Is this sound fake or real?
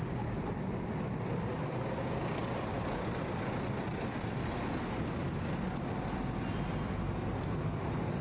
real